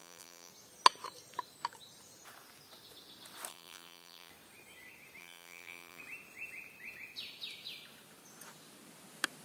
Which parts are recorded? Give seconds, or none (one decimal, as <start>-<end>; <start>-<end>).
0.5-3.5; 4.3-5.2; 6.0-9.4